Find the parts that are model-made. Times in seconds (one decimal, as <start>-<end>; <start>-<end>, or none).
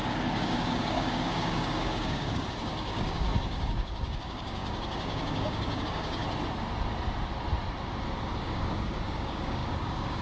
0.0-6.2; 8.4-10.2